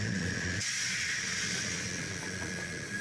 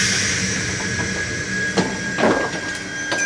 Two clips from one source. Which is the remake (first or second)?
first